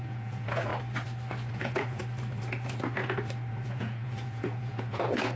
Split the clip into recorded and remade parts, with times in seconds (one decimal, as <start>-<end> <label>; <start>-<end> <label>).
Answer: 0.0-0.7 remade; 0.7-1.5 recorded; 1.5-2.0 remade; 2.0-3.5 recorded; 3.5-5.4 remade